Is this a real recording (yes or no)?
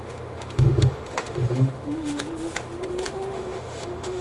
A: no